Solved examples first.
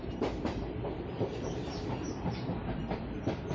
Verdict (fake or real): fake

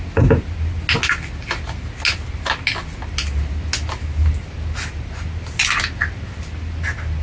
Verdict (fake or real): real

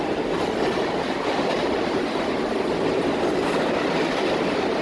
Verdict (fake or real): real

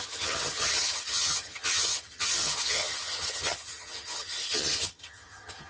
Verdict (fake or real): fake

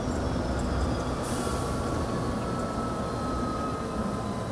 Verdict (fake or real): real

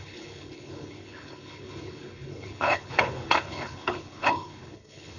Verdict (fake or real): fake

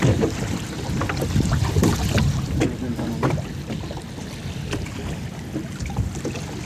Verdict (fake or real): real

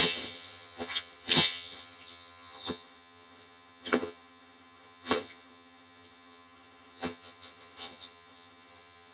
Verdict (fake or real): fake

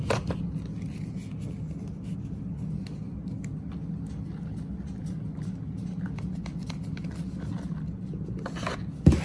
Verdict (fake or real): real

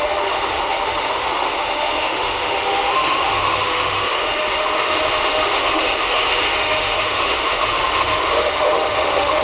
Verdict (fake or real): fake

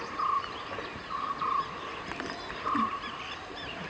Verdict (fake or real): real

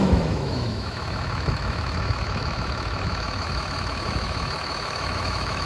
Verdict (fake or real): fake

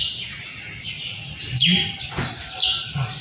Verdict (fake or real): real